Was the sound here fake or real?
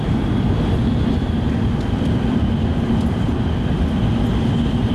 fake